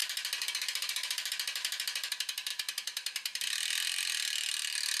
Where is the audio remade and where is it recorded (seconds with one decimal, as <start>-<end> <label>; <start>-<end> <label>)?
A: 0.0-1.3 remade; 1.3-2.5 recorded; 2.5-3.4 remade; 3.4-5.0 recorded

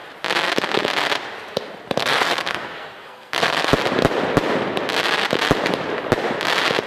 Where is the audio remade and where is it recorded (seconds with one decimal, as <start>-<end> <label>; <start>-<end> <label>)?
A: 0.0-2.0 recorded; 2.0-3.7 remade; 3.7-6.9 recorded